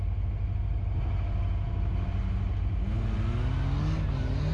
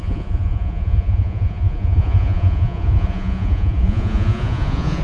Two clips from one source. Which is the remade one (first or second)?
second